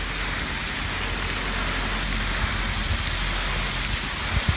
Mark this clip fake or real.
real